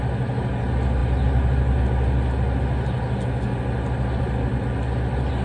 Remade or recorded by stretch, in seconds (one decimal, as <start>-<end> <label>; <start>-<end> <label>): 0.0-5.4 recorded